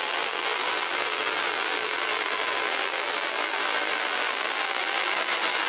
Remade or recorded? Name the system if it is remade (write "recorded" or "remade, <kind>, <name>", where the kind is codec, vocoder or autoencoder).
remade, vocoder, BigVGAN v2